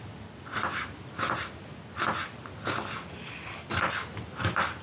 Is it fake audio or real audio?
real